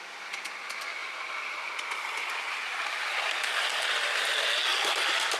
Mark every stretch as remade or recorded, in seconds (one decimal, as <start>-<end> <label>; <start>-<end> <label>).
0.0-4.7 recorded; 4.7-5.4 remade